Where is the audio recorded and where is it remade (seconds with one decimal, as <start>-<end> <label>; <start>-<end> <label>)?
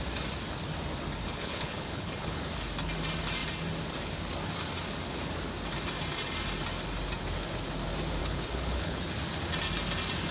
0.0-1.2 recorded; 1.2-2.4 remade; 2.4-8.2 recorded; 8.2-9.0 remade; 9.0-10.3 recorded